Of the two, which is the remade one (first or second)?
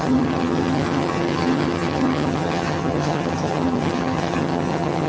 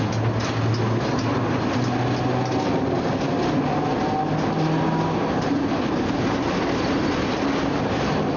first